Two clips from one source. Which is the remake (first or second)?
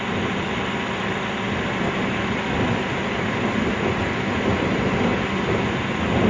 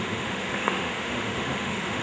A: second